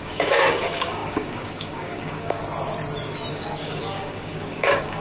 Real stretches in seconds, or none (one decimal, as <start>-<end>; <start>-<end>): 2.4-3.3